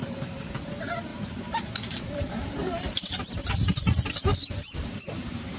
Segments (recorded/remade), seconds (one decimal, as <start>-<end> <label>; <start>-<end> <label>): 0.0-0.5 remade; 0.5-1.1 recorded; 1.1-3.5 remade; 3.5-4.3 recorded; 4.3-5.6 remade